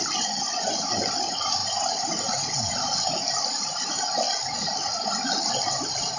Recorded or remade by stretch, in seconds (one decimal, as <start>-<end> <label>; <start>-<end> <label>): 0.0-6.2 recorded